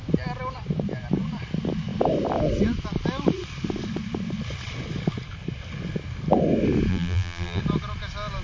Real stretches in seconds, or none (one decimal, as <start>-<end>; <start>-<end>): 0.0-6.9; 7.6-8.4

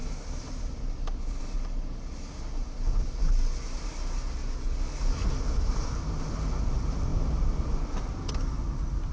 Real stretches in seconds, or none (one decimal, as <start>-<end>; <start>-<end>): 1.4-9.1

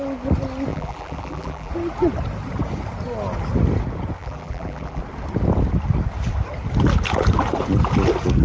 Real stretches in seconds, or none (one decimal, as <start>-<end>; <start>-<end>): 0.0-0.7; 1.7-4.2; 5.0-8.4

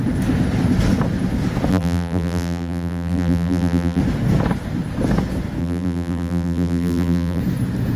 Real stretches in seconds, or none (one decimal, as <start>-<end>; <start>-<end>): 0.0-1.7; 4.0-5.6; 7.4-8.0

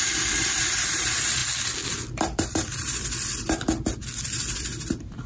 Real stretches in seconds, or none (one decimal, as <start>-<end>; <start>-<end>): 1.4-1.9